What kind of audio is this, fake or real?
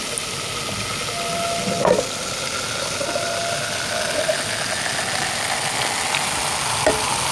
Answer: real